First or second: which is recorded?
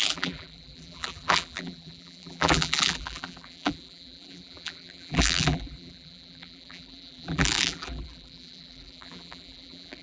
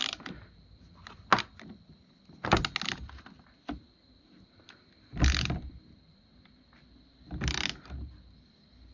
second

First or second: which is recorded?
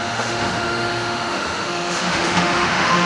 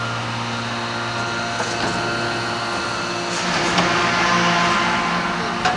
second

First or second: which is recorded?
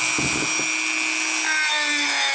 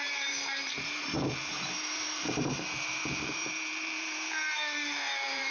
first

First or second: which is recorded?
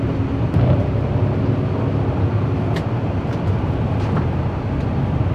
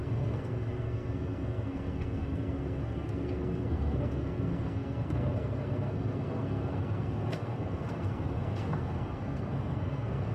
first